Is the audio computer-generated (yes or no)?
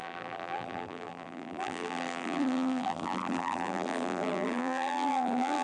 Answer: yes